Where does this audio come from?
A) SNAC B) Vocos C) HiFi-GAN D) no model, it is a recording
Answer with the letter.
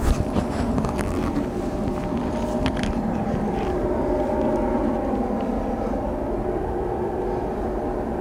D